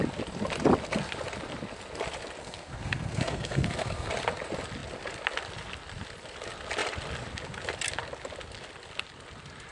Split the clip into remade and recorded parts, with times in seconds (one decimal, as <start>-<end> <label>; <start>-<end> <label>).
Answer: 0.0-2.4 recorded; 2.4-4.1 remade; 4.1-9.7 recorded